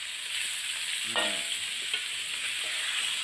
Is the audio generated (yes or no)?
no